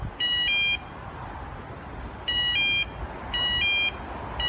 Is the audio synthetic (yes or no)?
no